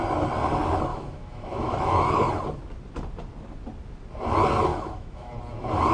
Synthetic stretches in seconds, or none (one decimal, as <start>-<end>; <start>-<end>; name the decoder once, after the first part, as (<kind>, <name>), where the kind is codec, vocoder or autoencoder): 0.9-2.3 (autoencoder, DAC-VAE); 4.7-5.3